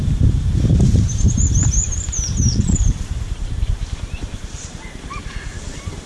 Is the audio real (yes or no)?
no